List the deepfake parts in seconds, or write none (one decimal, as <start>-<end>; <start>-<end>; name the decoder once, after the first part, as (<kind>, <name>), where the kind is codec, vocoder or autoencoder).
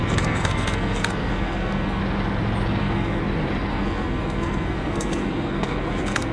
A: 0.0-2.0 (codec, SNAC); 2.8-3.2; 3.7-6.3